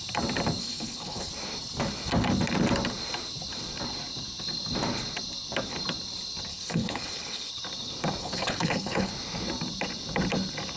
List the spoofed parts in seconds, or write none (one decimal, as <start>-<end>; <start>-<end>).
0.6-1.3; 6.5-7.5; 8.2-9.1